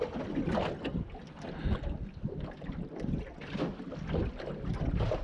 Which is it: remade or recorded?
recorded